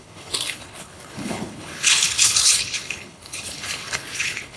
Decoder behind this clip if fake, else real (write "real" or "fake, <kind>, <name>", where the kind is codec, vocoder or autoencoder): fake, codec, HILCodec